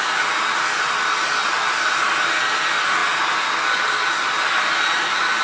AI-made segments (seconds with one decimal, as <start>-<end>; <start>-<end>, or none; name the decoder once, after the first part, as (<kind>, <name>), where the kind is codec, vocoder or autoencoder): none